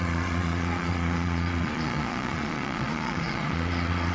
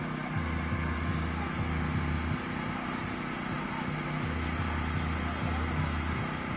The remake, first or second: first